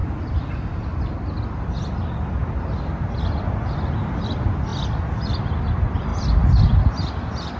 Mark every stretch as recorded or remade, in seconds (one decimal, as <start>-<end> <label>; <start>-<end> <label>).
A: 0.0-7.6 recorded

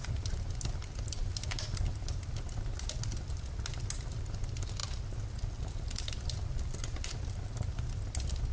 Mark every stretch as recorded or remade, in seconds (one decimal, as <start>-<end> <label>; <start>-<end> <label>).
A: 0.0-8.5 recorded

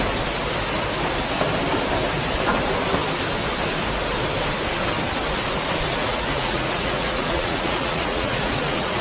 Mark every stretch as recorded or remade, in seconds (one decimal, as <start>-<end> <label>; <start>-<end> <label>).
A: 0.0-6.0 recorded; 6.0-9.0 remade